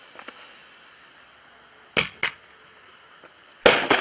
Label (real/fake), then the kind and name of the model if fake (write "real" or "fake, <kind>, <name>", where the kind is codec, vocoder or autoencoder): real